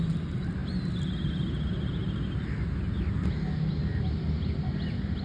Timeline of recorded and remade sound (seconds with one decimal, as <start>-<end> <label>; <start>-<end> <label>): 0.0-5.2 recorded